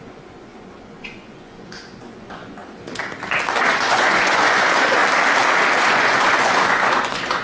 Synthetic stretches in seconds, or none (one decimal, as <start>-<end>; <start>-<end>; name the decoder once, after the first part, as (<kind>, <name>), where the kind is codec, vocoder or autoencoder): 0.0-2.6 (vocoder, Vocos); 3.6-5.0; 5.8-7.4